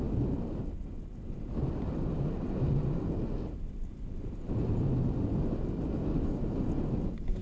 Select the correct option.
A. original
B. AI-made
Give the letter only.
A